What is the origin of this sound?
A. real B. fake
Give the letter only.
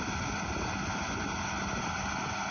A